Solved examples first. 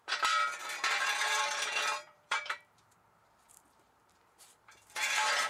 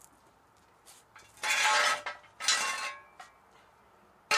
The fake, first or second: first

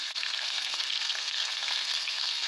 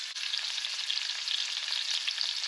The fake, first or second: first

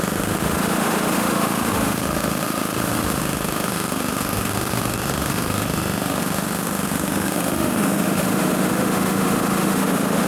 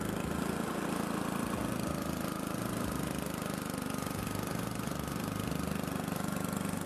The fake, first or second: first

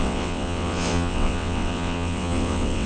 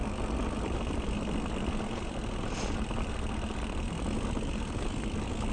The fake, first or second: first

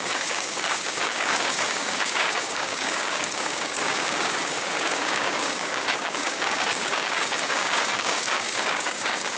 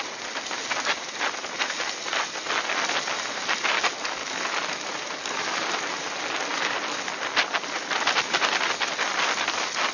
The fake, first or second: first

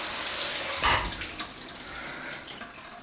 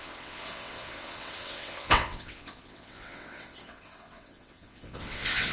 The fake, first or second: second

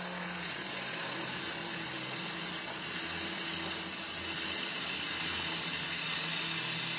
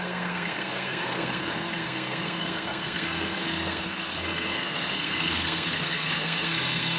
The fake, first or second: second